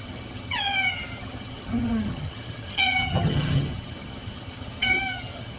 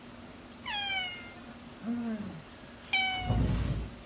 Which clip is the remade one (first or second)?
first